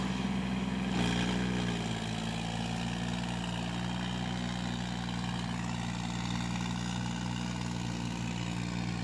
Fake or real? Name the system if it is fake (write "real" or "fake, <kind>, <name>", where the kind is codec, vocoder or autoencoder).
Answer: real